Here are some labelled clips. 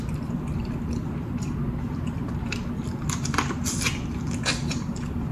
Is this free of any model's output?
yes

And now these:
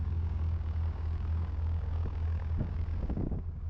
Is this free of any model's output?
no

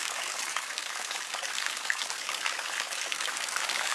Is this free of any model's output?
no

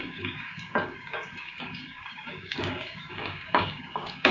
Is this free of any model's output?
no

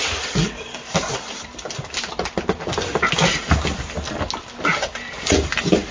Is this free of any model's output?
yes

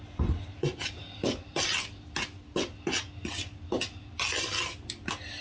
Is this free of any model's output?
yes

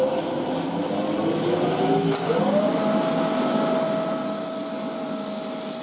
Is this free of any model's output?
yes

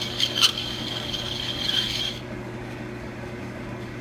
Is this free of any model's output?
no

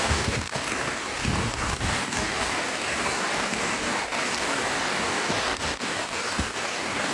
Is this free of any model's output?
no